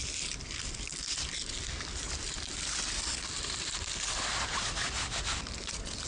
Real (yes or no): yes